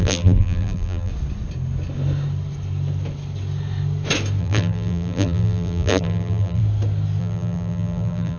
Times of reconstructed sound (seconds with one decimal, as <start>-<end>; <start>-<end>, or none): 0.0-1.1; 4.4-6.6; 7.2-8.4